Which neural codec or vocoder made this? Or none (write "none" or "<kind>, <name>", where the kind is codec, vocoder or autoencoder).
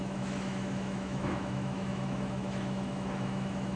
autoencoder, DAC-VAE